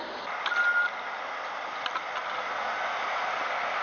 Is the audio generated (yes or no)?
no